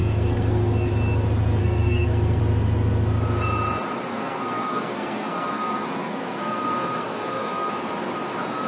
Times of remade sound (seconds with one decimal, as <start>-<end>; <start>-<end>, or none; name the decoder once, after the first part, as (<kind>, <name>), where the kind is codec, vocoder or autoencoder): 0.0-0.9 (codec, SNAC); 1.6-2.4; 4.1-7.7